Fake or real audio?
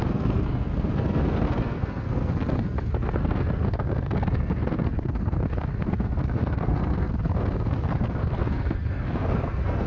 fake